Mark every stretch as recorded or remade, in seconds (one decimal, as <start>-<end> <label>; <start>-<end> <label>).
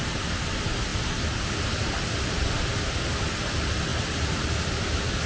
0.0-3.9 recorded; 3.9-4.4 remade; 4.4-5.3 recorded